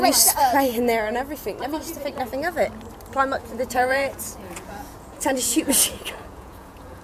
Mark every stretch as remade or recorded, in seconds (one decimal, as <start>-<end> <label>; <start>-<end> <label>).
0.0-3.4 recorded; 3.4-7.0 remade